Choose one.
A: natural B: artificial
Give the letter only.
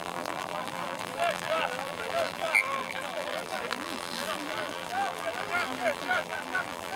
B